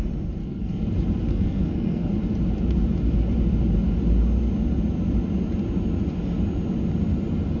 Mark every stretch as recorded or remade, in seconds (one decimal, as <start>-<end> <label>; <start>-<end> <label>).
0.0-0.4 recorded; 0.4-0.9 remade; 0.9-1.3 recorded; 1.3-2.1 remade; 2.1-7.6 recorded

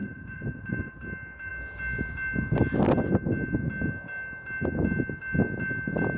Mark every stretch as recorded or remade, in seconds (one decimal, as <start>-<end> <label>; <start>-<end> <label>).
0.0-0.9 remade; 0.9-6.2 recorded

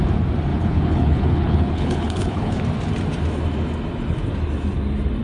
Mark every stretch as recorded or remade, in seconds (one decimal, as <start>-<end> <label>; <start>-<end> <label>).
0.0-0.5 recorded; 0.5-2.6 remade; 2.6-5.2 recorded

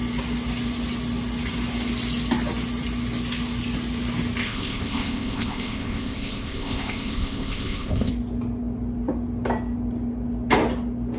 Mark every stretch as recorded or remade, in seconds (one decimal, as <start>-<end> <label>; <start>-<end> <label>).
0.0-4.4 recorded; 4.4-8.1 remade; 8.1-11.2 recorded

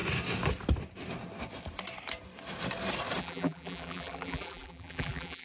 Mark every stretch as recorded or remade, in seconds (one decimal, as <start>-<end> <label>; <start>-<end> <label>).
0.0-3.2 recorded; 3.2-5.4 remade

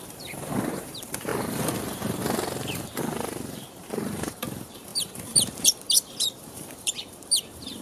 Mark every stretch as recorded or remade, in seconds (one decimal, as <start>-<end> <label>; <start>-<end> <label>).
0.0-1.3 remade; 1.3-3.0 recorded; 3.0-7.8 remade

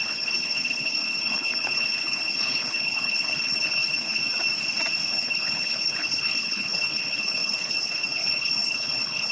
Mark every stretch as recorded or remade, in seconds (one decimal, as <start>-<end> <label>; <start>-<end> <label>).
0.0-4.2 remade; 4.2-5.1 recorded; 5.1-9.3 remade